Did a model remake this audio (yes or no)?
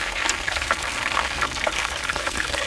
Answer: yes